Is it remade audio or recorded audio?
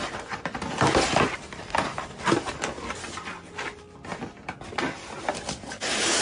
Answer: recorded